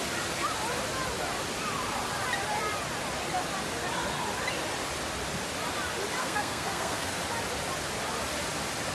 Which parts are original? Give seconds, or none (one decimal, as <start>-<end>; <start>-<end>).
0.0-6.2; 7.2-8.9